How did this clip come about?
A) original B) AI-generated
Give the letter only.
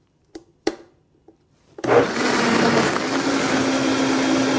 A